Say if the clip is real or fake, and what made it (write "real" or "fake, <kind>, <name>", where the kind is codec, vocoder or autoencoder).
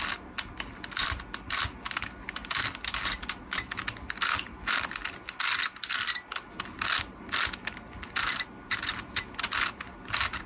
real